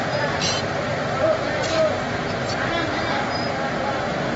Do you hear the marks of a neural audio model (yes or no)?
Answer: no